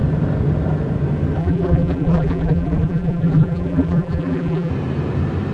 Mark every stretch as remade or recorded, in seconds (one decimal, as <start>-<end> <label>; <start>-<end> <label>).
0.0-1.4 recorded; 1.4-4.7 remade; 4.7-5.5 recorded